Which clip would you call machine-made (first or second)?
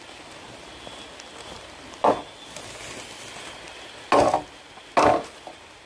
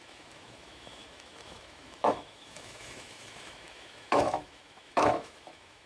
second